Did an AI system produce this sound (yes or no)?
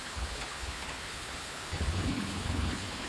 yes